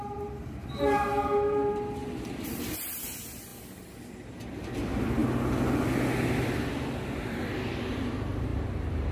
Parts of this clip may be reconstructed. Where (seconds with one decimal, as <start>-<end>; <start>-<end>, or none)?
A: 0.0-3.5; 4.1-5.2; 7.9-9.1